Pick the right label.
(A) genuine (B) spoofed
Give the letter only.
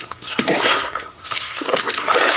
B